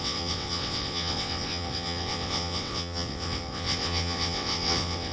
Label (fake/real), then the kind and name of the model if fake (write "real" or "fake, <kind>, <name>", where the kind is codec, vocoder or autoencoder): fake, vocoder, WaveNeXt